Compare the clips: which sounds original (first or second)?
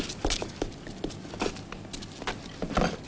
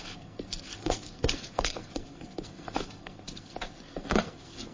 first